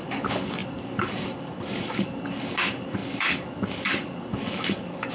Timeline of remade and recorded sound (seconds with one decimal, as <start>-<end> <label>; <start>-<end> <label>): 0.0-5.1 remade

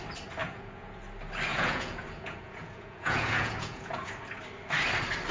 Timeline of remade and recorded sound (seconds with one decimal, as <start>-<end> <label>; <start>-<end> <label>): 0.0-0.4 recorded; 0.4-1.0 remade; 1.0-1.5 recorded; 1.5-4.1 remade; 4.1-5.3 recorded

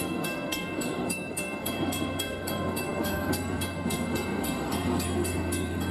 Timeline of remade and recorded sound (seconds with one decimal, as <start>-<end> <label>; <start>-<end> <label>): 0.0-5.9 remade

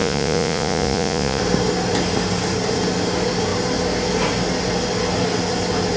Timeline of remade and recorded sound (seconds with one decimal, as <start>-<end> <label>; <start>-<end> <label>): 0.0-1.4 remade; 1.4-6.0 recorded